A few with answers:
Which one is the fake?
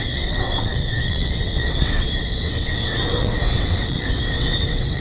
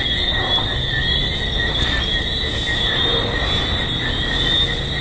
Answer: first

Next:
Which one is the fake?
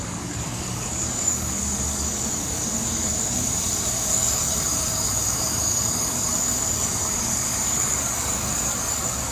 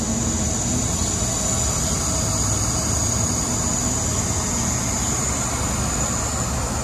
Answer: first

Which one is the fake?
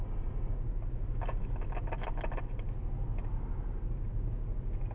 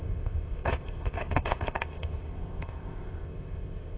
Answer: second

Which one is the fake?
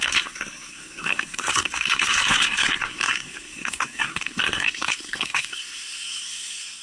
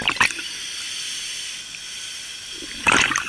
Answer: first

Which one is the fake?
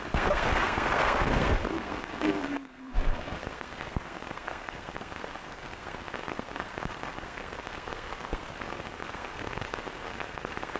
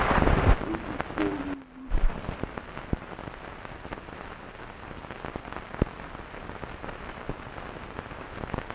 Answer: first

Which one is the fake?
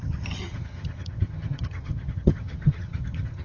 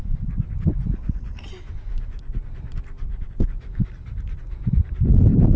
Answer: first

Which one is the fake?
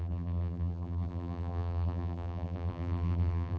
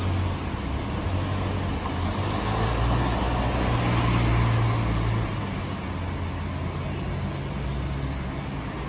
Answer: first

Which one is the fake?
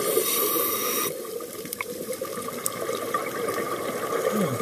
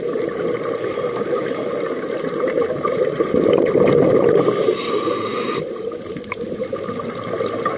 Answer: first